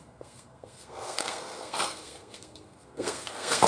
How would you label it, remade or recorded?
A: remade